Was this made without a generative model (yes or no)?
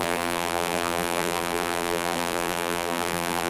no